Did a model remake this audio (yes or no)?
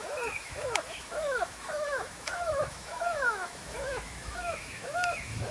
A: yes